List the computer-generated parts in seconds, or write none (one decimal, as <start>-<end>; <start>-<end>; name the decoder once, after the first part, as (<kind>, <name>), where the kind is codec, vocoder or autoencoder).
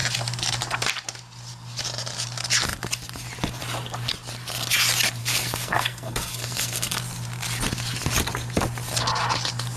5.2-7.0 (codec, SNAC)